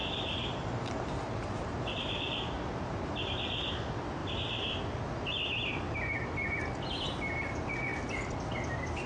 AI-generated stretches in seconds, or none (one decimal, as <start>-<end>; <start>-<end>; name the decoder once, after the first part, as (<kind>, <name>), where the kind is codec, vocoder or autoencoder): 0.0-3.7 (vocoder, BigVGAN v2); 4.2-4.8